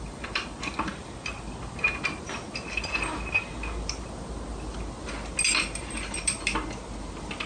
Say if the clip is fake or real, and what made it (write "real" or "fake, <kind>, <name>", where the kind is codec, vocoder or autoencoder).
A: real